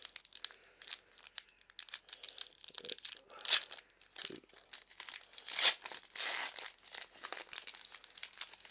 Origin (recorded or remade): recorded